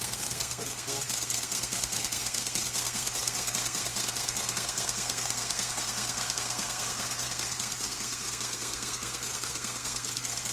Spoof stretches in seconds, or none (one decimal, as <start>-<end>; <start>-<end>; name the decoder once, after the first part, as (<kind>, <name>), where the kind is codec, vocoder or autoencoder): 0.0-10.5 (codec, SNAC)